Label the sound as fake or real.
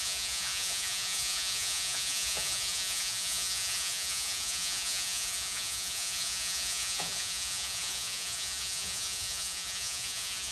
fake